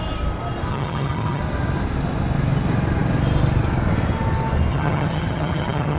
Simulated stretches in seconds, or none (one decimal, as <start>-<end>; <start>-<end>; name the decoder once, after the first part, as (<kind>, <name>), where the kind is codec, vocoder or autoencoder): 0.7-1.4 (vocoder, HiFi-GAN); 4.7-6.0